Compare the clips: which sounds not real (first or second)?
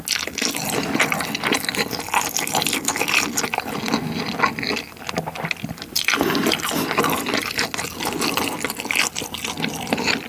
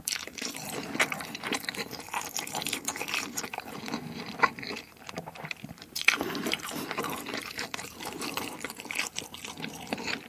second